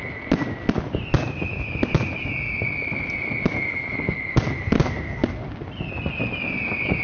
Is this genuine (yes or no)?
yes